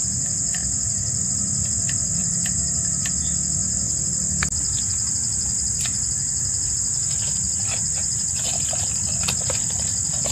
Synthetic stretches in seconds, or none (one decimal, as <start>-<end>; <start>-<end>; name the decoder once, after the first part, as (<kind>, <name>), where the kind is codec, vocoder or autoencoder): 2.2-3.0 (vocoder, BigVGAN v2)